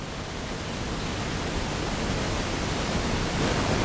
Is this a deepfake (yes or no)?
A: no